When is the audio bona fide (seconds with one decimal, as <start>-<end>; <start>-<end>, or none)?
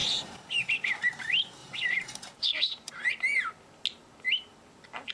0.6-1.6; 2.9-5.1